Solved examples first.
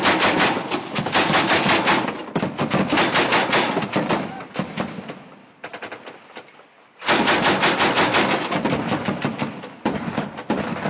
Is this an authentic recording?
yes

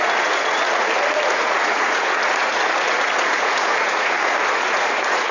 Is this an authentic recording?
no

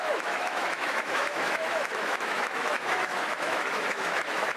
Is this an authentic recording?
no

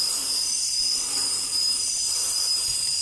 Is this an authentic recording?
no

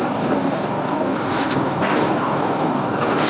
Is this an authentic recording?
no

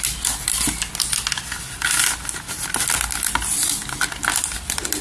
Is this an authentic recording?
yes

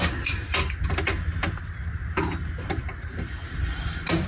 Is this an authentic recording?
yes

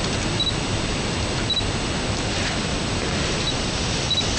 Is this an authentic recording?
yes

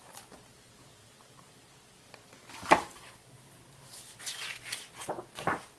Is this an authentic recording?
yes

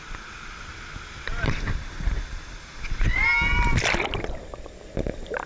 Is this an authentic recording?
yes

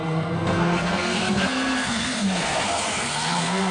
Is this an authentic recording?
no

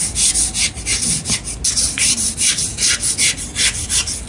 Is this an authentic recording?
yes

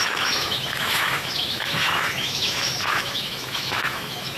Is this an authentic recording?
no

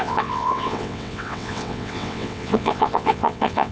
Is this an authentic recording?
no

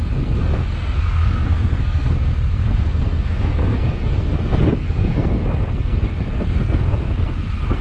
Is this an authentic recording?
no